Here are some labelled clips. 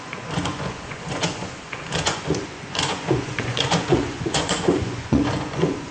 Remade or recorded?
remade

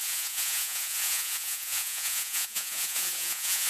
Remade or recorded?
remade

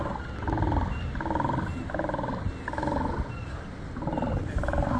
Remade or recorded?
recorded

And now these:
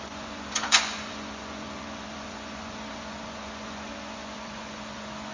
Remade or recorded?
remade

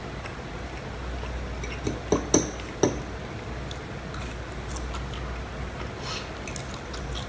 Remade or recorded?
recorded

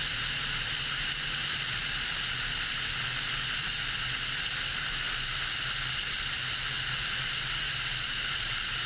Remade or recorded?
recorded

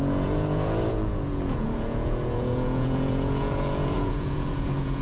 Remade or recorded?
remade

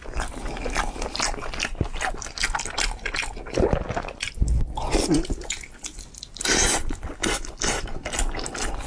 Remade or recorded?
recorded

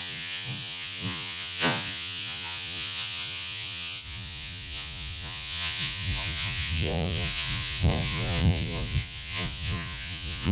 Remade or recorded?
remade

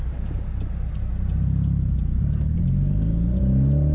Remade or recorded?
recorded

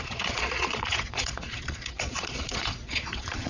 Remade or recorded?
remade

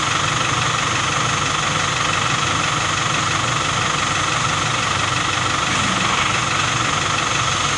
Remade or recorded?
recorded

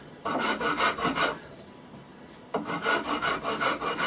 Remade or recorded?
recorded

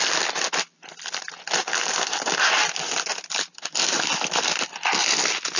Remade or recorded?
recorded